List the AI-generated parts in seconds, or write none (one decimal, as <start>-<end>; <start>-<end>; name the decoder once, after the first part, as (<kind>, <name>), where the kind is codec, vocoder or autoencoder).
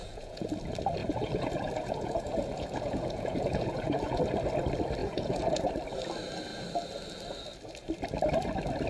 0.0-0.5 (vocoder, Vocos); 1.0-4.2; 5.0-5.7